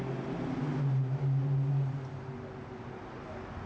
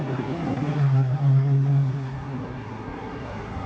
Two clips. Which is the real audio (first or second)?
first